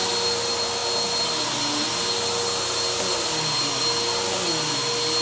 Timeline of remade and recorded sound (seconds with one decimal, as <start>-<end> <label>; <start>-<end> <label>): 0.0-5.2 recorded